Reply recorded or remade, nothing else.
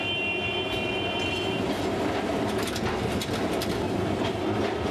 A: recorded